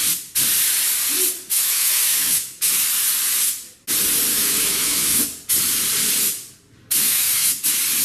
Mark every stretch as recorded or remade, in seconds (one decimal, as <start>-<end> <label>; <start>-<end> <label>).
0.0-1.5 recorded; 1.5-2.7 remade; 2.7-4.3 recorded; 4.3-5.2 remade; 5.2-7.0 recorded; 7.0-7.6 remade; 7.6-8.0 recorded